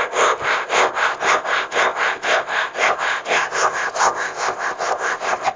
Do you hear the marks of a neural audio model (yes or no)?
yes